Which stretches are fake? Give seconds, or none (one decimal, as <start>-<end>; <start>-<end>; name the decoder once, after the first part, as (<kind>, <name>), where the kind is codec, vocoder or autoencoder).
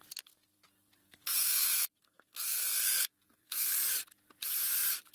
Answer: 1.0-3.8 (codec, SNAC)